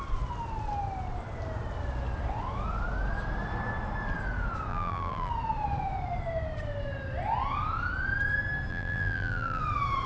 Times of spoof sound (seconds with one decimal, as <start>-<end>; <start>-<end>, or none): 4.7-5.3; 8.7-9.6